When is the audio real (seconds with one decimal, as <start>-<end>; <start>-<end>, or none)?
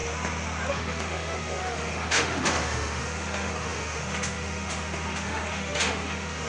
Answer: 0.0-0.7